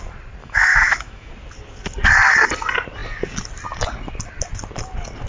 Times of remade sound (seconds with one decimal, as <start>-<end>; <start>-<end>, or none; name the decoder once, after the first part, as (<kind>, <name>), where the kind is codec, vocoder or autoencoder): 0.4-1.3 (autoencoder, DAC-VAE)